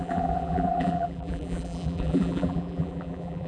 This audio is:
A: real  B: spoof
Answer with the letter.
B